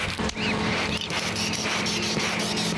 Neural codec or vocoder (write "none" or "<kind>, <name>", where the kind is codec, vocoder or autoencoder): none